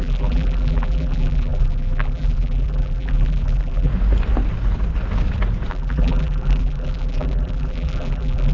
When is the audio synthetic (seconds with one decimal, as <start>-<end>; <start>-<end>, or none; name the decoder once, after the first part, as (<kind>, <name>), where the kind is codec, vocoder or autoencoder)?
0.0-3.9 (vocoder, BigVGAN v2); 5.7-8.5